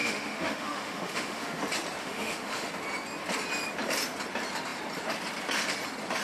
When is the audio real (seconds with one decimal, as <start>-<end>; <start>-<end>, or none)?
1.6-2.0; 2.7-6.2